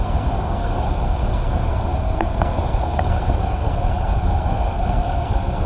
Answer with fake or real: fake